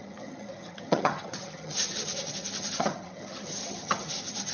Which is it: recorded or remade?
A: remade